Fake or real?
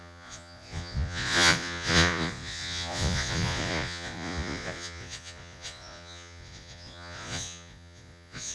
fake